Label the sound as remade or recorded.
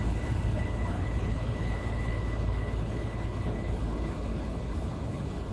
remade